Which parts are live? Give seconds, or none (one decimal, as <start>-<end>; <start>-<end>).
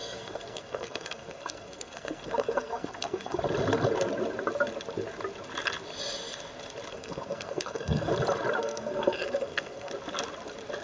3.4-6.9; 8.1-8.6; 9.9-10.8